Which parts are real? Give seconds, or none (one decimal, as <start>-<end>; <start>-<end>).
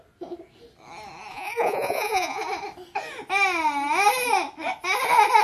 0.0-1.3; 2.4-5.4